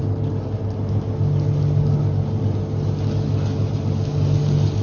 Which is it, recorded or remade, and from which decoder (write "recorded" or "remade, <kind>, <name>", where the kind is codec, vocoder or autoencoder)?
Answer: recorded